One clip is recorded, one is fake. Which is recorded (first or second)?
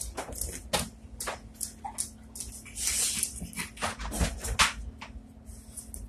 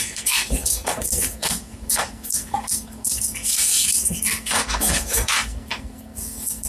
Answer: first